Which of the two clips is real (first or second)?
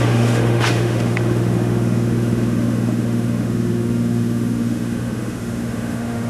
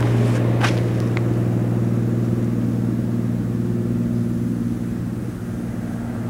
second